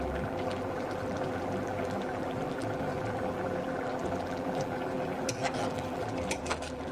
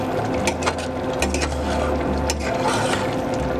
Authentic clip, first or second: second